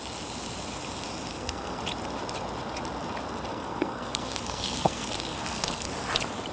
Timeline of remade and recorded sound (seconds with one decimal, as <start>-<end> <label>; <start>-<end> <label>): 0.0-1.3 recorded; 1.3-1.8 remade; 1.8-3.5 recorded; 3.5-5.9 remade; 5.9-6.5 recorded